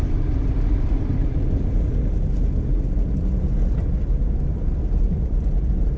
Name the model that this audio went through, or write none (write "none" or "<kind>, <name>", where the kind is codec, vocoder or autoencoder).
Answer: vocoder, BigVGAN v2